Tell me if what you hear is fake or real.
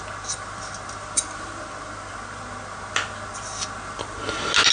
real